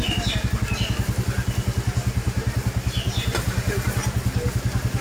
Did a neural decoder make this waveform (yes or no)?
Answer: no